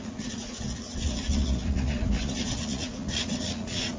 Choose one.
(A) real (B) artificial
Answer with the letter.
B